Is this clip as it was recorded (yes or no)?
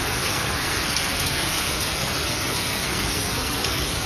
no